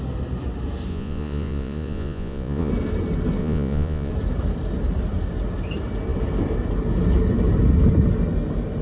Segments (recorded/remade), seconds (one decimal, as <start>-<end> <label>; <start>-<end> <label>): 0.0-0.9 recorded; 0.9-2.7 remade; 2.7-3.4 recorded; 3.4-4.1 remade; 4.1-8.8 recorded